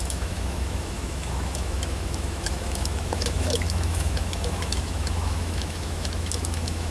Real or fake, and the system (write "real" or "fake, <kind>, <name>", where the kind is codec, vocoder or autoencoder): fake, autoencoder, DAC-VAE